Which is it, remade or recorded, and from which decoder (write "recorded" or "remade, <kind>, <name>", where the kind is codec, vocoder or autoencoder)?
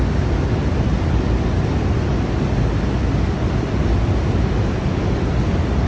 recorded